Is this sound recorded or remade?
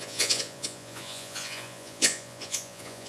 remade